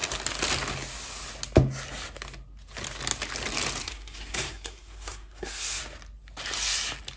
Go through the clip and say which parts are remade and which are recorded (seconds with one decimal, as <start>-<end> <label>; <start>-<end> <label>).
0.0-3.8 recorded; 3.8-5.8 remade; 5.8-7.2 recorded